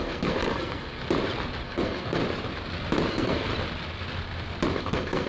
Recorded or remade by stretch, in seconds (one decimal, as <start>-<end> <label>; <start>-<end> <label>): 0.0-1.0 remade; 1.0-1.6 recorded; 1.6-2.2 remade; 2.2-3.1 recorded; 3.1-3.5 remade; 3.5-4.8 recorded; 4.8-5.3 remade